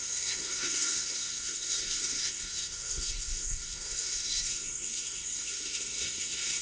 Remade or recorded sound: remade